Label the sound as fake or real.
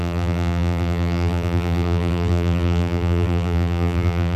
fake